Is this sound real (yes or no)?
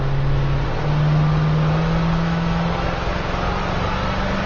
yes